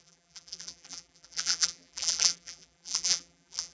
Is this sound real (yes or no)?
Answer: no